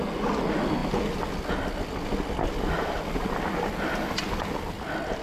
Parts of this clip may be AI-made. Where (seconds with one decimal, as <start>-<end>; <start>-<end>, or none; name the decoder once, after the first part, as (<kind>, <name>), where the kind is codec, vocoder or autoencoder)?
none